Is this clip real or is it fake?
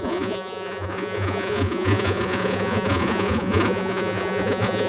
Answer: fake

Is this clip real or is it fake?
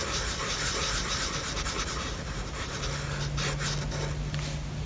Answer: real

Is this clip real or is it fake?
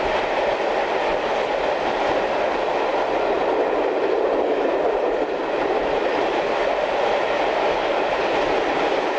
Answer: real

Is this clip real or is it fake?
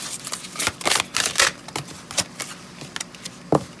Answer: real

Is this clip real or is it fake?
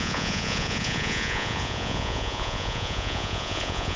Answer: fake